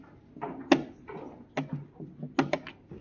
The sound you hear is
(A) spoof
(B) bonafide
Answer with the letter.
B